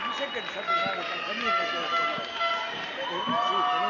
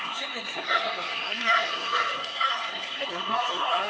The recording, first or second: first